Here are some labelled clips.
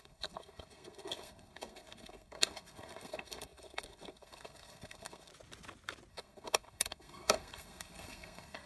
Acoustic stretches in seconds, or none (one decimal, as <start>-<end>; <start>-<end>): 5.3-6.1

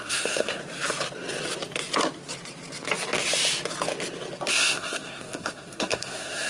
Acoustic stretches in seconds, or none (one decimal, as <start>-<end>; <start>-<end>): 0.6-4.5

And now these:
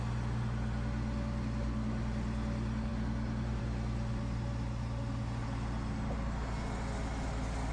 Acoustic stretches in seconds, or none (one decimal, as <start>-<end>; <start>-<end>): 0.0-7.7

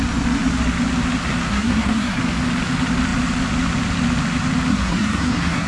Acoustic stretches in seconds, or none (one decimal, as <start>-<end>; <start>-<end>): 0.0-1.5; 2.2-4.7